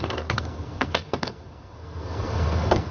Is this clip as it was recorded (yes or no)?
no